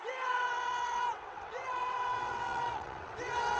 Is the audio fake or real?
fake